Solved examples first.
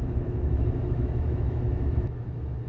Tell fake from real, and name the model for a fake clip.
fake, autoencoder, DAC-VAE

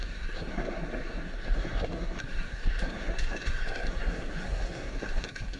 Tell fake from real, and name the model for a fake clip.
fake, codec, SNAC